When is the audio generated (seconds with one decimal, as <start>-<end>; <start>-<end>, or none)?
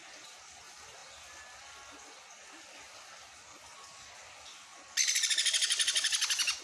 none